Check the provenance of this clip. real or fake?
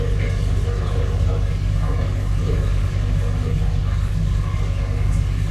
fake